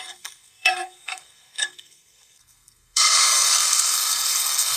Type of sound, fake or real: fake